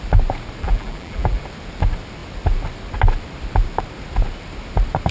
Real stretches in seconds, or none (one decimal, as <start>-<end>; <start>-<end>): 0.0-0.6; 1.4-5.1